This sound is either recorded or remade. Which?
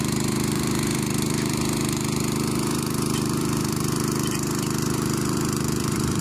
remade